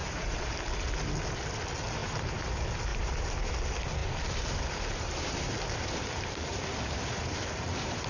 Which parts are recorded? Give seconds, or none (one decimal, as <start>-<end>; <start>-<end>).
0.6-2.0; 2.5-2.9; 3.5-4.0